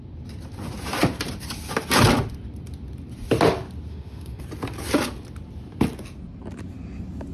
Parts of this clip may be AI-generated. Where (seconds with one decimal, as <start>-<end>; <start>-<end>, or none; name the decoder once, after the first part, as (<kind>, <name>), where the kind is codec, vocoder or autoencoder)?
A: 3.9-4.4 (autoencoder, DAC-VAE)